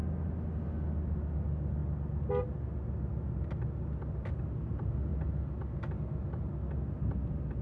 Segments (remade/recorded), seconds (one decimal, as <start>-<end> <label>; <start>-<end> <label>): 0.0-7.6 recorded